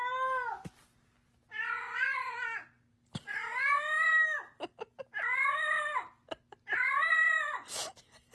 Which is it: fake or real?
real